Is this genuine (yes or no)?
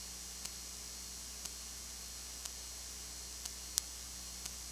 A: yes